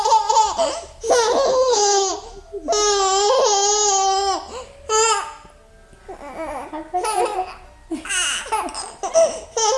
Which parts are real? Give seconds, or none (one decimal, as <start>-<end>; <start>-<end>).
0.0-1.5; 2.1-9.8